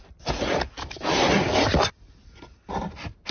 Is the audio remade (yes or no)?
no